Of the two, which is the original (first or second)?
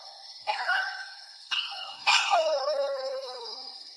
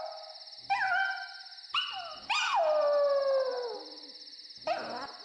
second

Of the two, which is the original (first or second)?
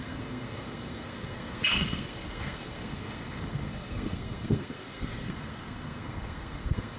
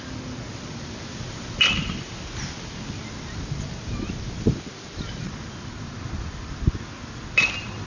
second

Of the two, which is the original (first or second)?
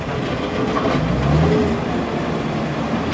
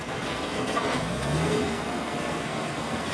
first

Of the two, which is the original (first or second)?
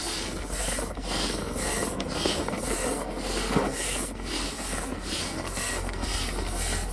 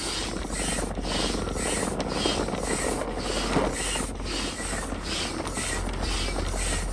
second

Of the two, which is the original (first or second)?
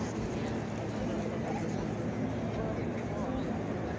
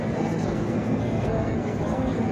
first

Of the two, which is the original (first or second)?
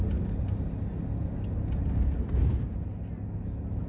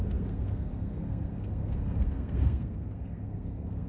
first